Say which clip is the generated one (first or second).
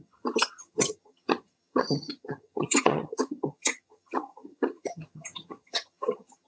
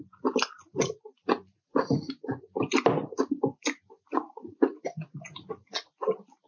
first